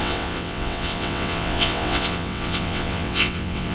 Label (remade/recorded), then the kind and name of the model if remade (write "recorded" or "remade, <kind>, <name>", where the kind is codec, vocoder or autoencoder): remade, vocoder, WaveNeXt